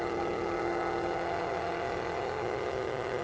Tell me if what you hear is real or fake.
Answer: fake